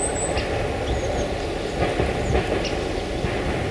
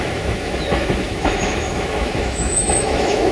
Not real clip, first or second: second